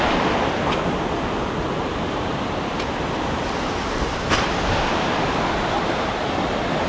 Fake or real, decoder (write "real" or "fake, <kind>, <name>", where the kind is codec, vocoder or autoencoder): real